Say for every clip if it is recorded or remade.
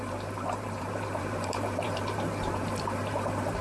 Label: remade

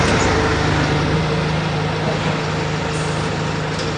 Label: recorded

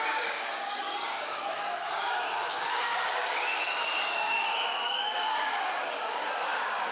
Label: remade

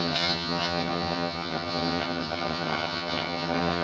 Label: remade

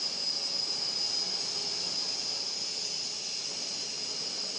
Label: recorded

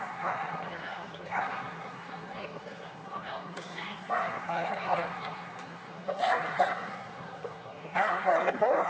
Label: remade